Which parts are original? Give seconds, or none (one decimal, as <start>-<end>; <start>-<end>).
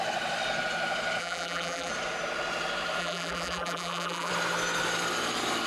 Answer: 0.0-1.2; 1.9-3.0; 4.3-5.7